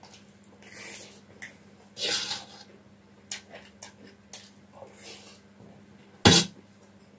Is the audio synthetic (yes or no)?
no